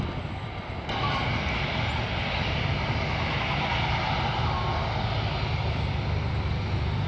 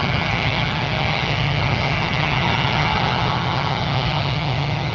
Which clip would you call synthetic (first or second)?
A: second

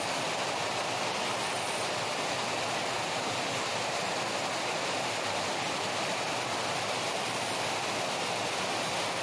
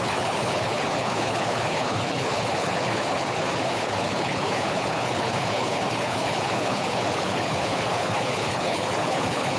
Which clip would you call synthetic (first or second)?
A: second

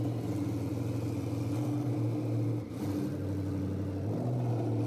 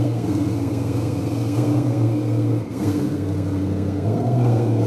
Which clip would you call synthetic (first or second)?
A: second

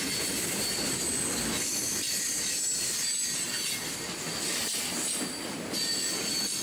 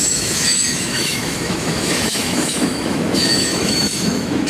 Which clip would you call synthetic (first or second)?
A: second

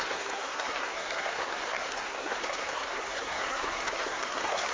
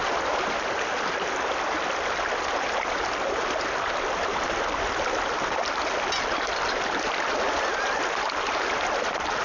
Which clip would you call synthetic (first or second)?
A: first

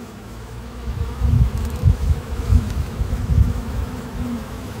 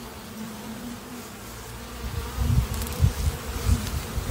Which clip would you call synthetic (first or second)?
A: first